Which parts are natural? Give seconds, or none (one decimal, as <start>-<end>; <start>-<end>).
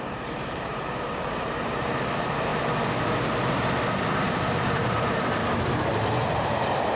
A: 2.5-4.1